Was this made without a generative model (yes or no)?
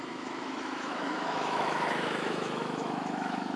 no